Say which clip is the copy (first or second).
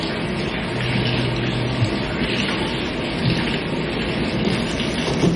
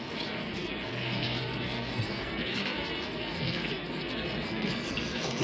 second